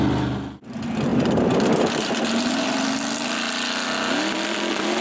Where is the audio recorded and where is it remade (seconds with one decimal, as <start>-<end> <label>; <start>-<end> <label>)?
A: 0.0-5.0 recorded